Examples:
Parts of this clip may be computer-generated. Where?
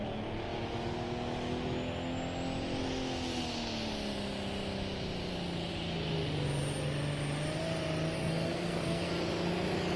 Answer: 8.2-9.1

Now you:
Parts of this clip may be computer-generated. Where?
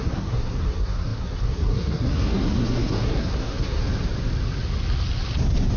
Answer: 0.0-3.8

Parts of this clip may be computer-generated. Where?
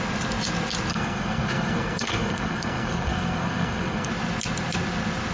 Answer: 0.9-4.1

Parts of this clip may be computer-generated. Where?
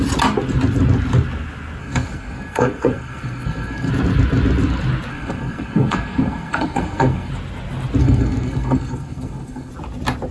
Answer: 1.8-3.9; 5.1-7.3; 8.0-9.7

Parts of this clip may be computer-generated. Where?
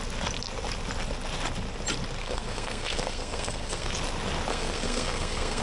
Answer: 2.2-3.9; 4.5-5.6